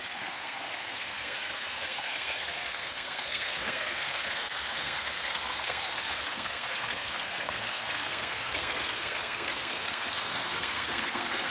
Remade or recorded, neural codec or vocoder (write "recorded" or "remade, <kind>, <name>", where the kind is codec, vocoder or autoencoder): remade, codec, SNAC